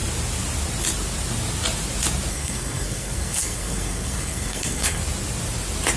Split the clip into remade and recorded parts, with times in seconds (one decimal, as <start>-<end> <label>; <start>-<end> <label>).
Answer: 0.0-2.3 recorded; 2.3-5.0 remade; 5.0-6.0 recorded